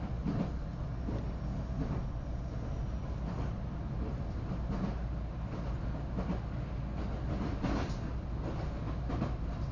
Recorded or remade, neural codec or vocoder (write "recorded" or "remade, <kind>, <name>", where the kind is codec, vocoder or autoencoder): recorded